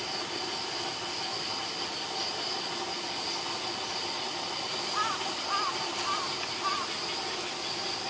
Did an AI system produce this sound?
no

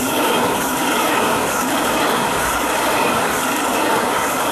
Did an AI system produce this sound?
yes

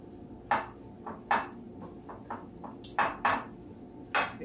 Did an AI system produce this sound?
no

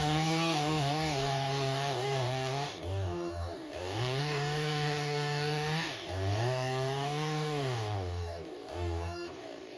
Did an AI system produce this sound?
yes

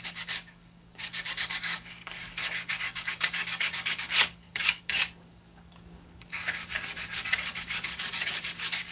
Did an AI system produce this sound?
yes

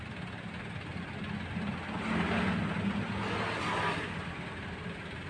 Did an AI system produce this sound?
no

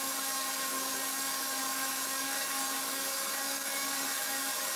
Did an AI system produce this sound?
yes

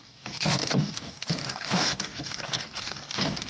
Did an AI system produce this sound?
yes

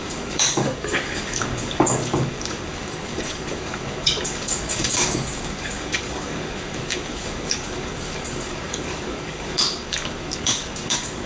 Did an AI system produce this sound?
yes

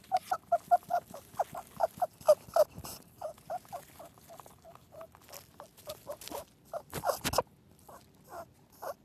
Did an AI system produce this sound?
no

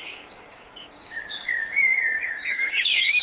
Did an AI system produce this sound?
yes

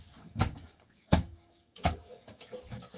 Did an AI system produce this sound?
yes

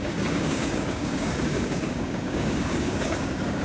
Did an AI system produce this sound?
yes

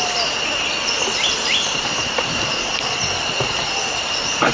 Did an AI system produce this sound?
no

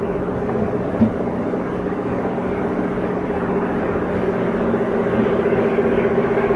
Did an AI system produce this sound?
yes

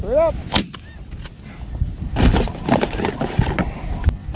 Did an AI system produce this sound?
no